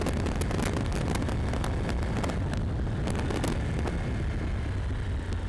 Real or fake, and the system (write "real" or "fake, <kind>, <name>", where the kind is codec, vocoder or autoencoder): real